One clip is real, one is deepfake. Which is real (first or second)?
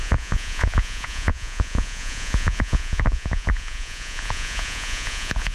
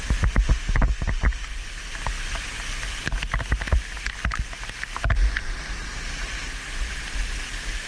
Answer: second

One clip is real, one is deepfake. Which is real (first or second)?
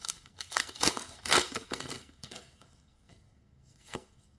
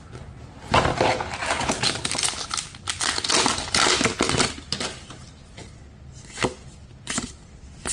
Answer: second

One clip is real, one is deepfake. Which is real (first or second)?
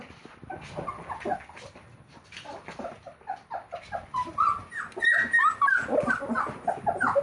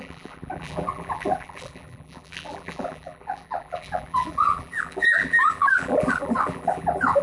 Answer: first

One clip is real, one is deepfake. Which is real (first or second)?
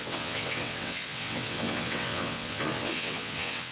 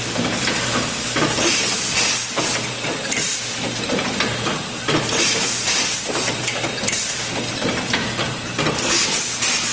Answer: second